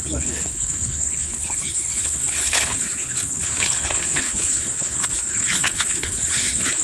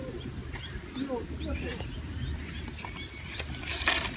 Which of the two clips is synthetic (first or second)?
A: first